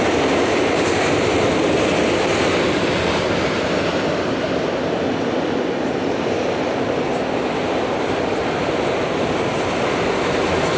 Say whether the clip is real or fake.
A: real